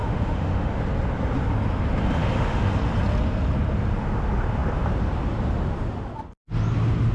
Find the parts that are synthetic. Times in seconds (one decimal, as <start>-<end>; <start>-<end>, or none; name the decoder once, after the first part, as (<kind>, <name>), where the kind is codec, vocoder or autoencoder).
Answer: 0.0-0.8 (autoencoder, DAC-VAE); 2.2-2.7